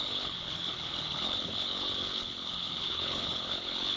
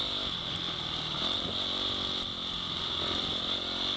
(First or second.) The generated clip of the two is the first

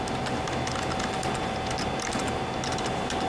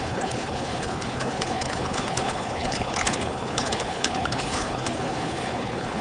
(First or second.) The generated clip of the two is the second